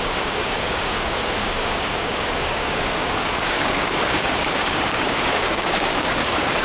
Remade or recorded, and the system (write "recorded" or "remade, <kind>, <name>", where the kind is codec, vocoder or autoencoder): remade, codec, DAC